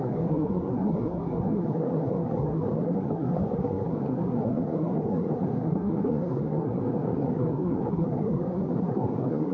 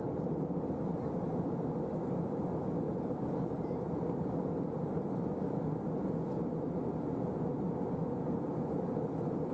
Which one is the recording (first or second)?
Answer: second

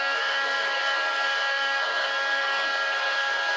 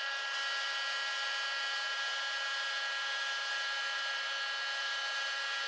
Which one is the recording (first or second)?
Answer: second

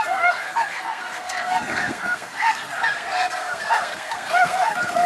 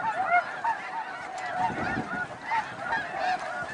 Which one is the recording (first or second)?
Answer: second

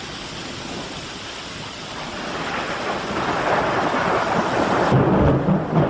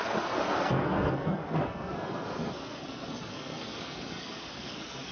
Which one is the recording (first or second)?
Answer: first